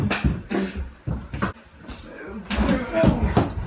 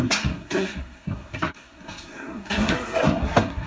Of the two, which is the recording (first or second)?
first